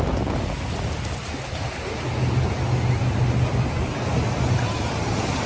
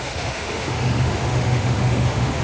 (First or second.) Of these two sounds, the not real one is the second